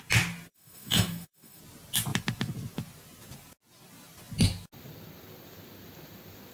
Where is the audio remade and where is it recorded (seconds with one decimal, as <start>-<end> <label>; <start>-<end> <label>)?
0.0-0.5 recorded; 0.5-1.6 remade; 1.6-6.5 recorded